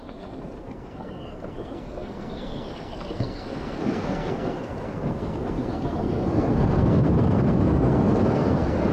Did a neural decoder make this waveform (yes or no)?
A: yes